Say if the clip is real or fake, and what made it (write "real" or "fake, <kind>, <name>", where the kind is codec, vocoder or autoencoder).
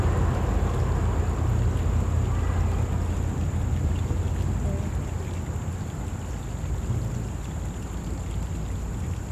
real